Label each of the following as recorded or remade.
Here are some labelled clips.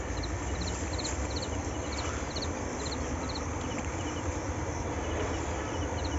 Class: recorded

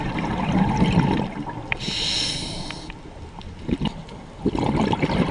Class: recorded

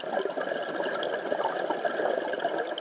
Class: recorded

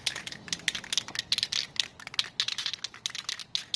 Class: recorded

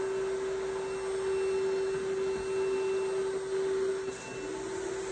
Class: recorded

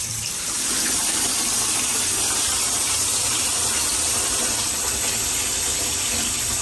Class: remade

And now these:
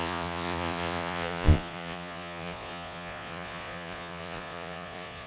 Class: remade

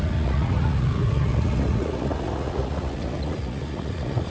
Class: remade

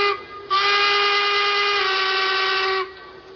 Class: recorded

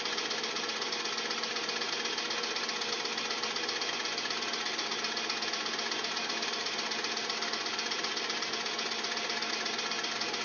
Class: recorded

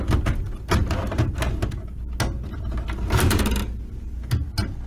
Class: recorded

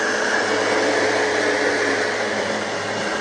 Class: recorded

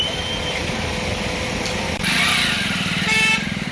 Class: remade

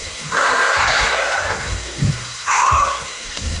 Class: remade